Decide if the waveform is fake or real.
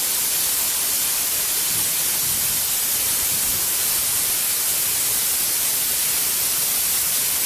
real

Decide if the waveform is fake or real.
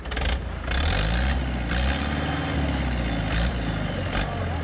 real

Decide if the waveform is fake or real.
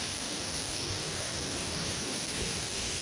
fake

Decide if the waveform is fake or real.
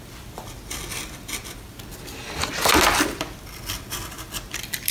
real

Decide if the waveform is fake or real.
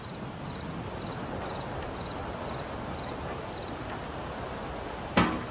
real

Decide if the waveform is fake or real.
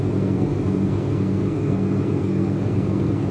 fake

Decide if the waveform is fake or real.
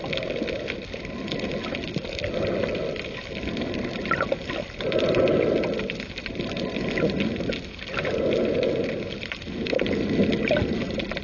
real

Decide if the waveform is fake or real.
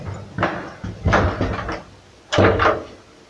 real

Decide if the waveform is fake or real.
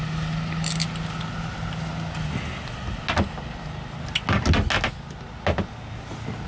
real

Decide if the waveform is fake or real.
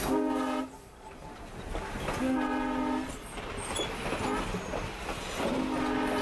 real